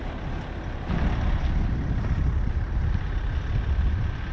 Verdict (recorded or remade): recorded